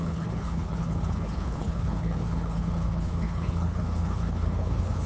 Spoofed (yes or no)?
yes